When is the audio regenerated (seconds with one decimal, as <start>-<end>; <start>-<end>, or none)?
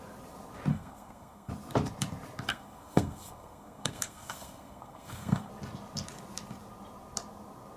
0.7-1.5; 2.5-5.5